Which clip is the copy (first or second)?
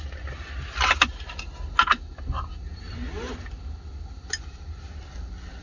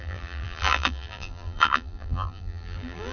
second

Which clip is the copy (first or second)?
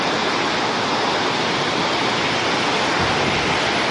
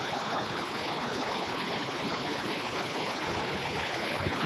second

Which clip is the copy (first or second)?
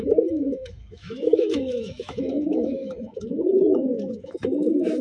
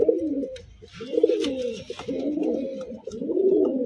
first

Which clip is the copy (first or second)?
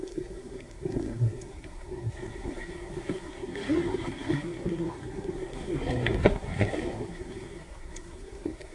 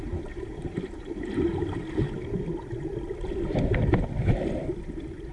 first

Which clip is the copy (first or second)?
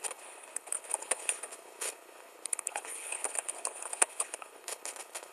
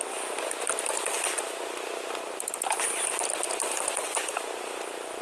first